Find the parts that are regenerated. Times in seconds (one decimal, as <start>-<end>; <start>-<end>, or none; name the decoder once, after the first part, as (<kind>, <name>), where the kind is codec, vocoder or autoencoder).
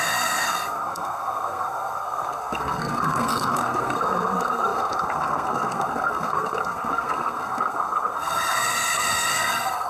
0.0-9.9 (codec, SNAC)